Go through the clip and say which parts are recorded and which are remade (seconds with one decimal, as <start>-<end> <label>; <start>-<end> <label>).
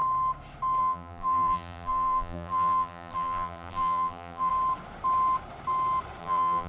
0.0-0.8 recorded; 0.8-4.5 remade; 4.5-6.2 recorded; 6.2-6.7 remade